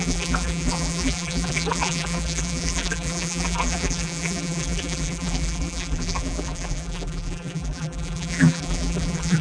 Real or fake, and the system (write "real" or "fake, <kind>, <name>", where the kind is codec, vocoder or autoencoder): fake, vocoder, BigVGAN v2